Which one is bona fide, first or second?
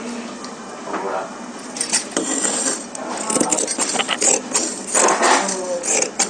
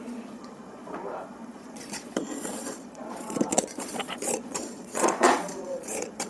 first